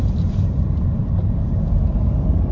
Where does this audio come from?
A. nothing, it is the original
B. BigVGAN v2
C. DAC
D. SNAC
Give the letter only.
B